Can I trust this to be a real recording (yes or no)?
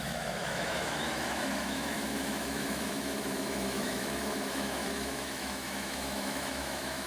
no